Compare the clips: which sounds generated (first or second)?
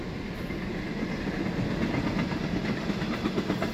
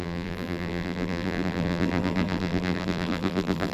second